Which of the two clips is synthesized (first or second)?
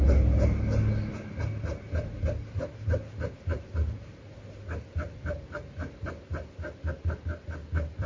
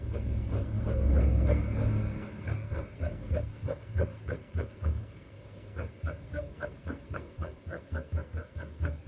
second